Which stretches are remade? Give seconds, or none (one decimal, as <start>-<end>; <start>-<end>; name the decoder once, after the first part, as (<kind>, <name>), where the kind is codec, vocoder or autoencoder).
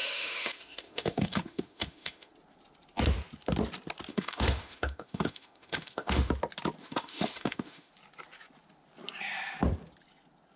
0.0-2.3 (autoencoder, DAC-VAE); 4.1-6.3; 6.8-7.9